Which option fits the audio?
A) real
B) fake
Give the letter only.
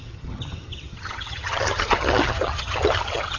B